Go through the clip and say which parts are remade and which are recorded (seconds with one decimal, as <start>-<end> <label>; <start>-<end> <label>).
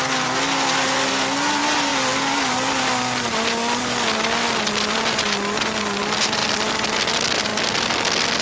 0.0-8.4 recorded